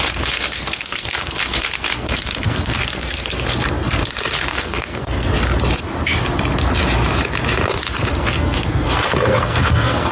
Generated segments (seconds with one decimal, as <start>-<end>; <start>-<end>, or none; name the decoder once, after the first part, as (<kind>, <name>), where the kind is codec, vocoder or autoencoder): 0.0-4.0 (codec, SNAC); 4.5-5.3; 8.1-10.1